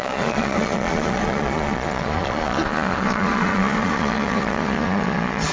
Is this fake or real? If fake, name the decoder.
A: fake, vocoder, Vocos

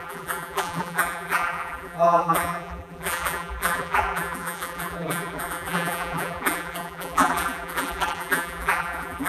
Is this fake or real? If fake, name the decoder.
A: fake, vocoder, BigVGAN v2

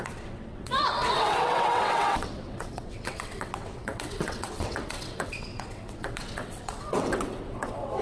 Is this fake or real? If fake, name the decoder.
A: fake, vocoder, WaveNeXt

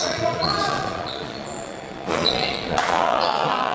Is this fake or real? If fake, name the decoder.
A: fake, vocoder, Vocos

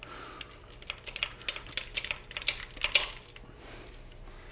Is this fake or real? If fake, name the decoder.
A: real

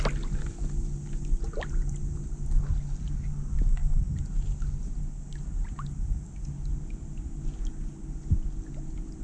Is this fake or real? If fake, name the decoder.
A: real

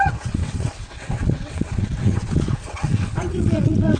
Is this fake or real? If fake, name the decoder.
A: fake, vocoder, WaveNeXt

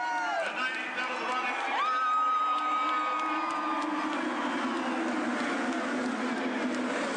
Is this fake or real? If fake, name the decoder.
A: real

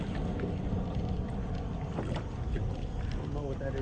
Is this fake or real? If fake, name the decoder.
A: real